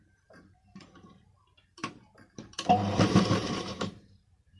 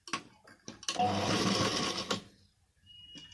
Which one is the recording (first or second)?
second